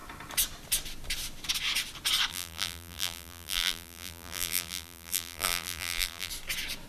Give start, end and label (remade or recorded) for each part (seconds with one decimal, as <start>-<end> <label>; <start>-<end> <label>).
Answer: 0.0-2.3 recorded; 2.3-6.3 remade; 6.3-6.9 recorded